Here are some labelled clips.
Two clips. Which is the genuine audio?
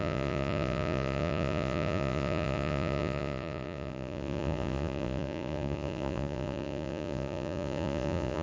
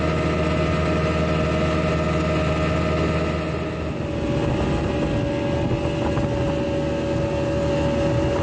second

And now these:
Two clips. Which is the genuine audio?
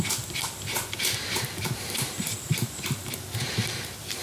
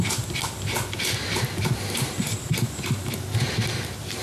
second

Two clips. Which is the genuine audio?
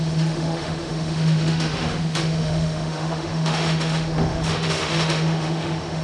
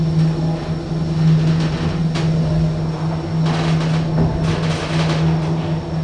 second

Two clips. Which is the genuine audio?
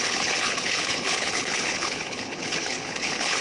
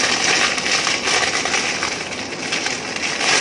second